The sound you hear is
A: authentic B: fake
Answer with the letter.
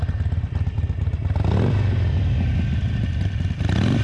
A